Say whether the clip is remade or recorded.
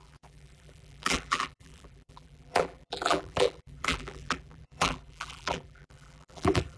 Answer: remade